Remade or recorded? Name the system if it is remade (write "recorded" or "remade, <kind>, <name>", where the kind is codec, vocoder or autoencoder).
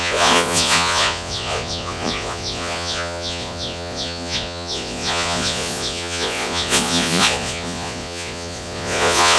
remade, vocoder, Vocos